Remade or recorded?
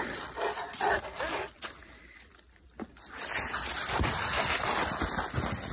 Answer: remade